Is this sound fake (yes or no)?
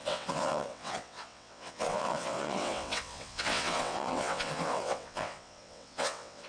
yes